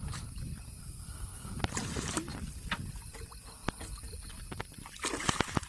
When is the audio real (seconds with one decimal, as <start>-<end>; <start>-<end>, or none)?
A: 0.0-0.8; 1.6-5.7